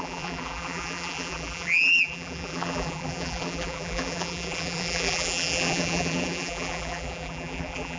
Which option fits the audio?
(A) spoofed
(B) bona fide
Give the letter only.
A